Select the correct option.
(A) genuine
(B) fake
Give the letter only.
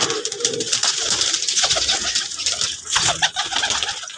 A